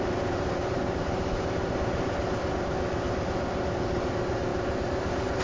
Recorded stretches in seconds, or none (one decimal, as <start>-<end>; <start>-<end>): 0.0-5.4